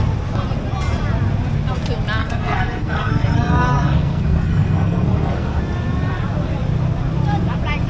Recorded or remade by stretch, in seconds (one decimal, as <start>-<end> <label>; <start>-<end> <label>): 0.0-2.2 recorded; 2.2-5.6 remade; 5.6-7.9 recorded